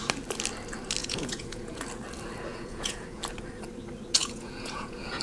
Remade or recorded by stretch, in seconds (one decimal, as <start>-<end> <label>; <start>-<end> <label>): 0.0-1.0 recorded; 1.0-1.8 remade; 1.8-2.5 recorded; 2.5-3.2 remade; 3.2-4.2 recorded; 4.2-5.2 remade